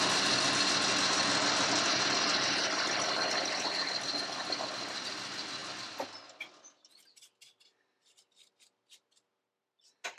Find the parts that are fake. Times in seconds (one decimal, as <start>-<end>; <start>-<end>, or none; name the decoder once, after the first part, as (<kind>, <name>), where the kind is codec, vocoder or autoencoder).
none